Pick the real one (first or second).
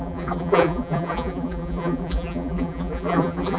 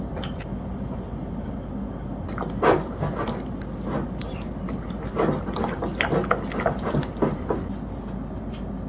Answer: second